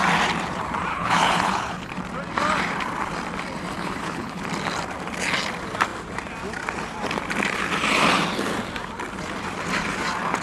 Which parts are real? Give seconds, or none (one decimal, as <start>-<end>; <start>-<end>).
0.0-0.9; 1.9-3.8; 4.4-10.4